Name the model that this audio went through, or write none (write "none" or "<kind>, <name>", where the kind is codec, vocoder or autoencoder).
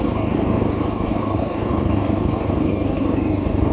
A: codec, DAC